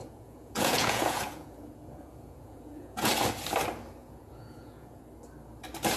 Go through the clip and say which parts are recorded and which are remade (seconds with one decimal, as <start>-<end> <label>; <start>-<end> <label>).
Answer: 0.0-3.1 remade; 3.1-4.0 recorded; 4.0-5.0 remade; 5.0-6.0 recorded